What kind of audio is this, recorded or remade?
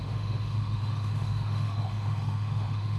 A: remade